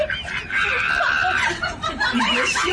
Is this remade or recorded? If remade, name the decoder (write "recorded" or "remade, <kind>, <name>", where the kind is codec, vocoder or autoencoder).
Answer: remade, vocoder, BigVGAN v2